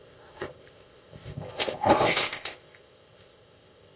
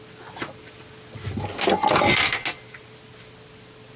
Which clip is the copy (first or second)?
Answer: first